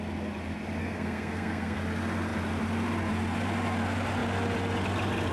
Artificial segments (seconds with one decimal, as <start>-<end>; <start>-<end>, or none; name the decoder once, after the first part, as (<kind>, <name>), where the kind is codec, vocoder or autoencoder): 0.8-1.8 (codec, SNAC)